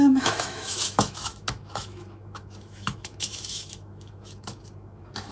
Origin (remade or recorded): remade